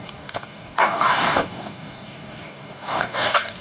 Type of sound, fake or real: fake